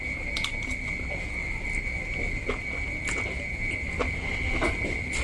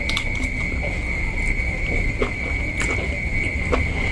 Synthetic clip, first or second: second